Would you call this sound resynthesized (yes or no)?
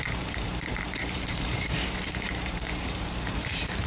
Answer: yes